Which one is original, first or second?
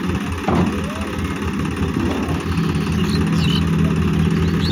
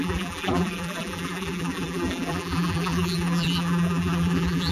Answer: first